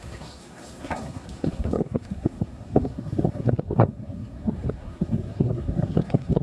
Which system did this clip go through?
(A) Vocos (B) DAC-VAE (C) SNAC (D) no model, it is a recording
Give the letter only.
C